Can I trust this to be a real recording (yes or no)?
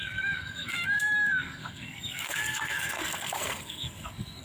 no